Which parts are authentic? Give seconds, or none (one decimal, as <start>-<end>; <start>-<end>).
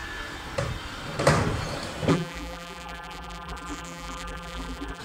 0.0-2.1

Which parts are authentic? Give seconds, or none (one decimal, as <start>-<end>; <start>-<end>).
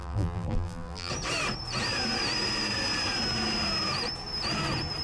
1.1-5.0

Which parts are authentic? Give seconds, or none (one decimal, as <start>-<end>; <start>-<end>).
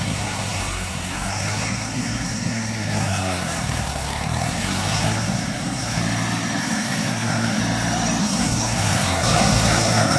6.0-6.6; 7.6-8.2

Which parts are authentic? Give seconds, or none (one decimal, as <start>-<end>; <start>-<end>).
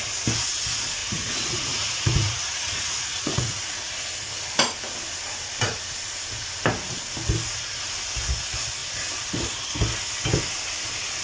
0.0-1.0; 3.9-11.2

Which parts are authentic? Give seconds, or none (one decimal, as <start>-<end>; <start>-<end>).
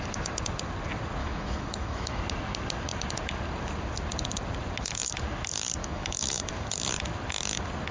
0.0-1.2; 2.2-5.8; 6.5-7.9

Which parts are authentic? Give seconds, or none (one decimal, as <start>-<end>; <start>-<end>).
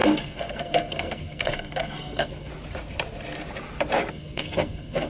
2.5-4.1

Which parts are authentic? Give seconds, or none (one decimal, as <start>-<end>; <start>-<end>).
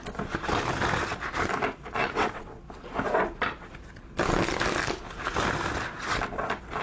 0.0-2.0; 2.6-6.8